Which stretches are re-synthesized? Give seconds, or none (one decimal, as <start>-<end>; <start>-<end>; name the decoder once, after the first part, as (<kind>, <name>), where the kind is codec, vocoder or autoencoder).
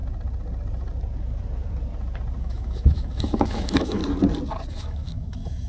2.4-4.0 (autoencoder, DAC-VAE); 4.7-5.7